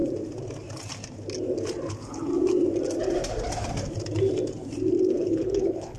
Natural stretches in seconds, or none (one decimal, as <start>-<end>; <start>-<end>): 0.0-1.9; 2.3-5.1